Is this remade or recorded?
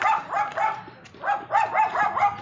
recorded